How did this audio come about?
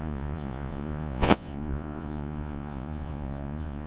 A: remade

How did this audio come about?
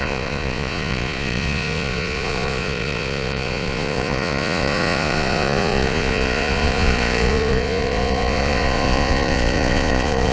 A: remade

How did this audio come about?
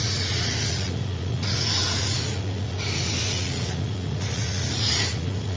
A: remade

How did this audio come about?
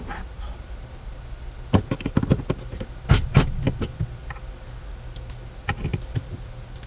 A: recorded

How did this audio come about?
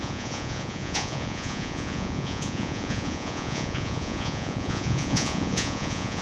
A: remade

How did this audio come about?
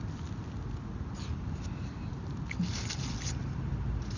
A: recorded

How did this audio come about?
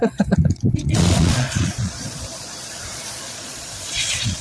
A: remade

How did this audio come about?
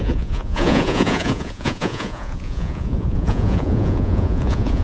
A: remade